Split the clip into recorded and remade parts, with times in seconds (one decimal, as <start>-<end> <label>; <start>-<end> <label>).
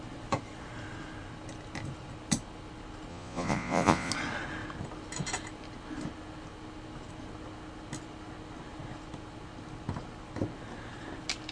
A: 0.0-3.1 recorded; 3.1-4.1 remade; 4.1-11.5 recorded